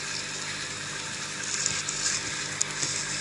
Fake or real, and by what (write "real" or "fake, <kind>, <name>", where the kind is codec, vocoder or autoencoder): real